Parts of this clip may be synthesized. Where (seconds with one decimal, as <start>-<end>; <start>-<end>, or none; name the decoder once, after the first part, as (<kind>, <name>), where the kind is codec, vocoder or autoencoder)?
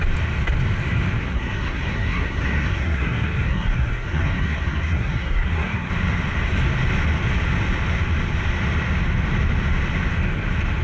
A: 1.2-5.9 (codec, SNAC)